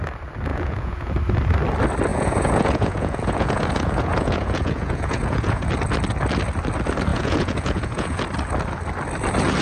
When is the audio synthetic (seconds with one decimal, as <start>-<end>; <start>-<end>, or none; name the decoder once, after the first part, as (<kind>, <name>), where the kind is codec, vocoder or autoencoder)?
0.5-1.1 (vocoder, Vocos); 2.1-5.7; 7.1-8.2